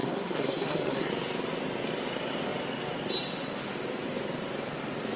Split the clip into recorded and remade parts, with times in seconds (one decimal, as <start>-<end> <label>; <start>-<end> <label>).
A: 0.0-1.1 remade; 1.1-5.2 recorded